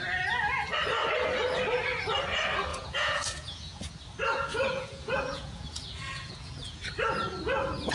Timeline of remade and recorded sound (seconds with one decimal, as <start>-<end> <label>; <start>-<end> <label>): 0.0-2.7 recorded; 2.7-3.9 remade; 3.9-4.5 recorded; 4.5-6.8 remade; 6.8-7.9 recorded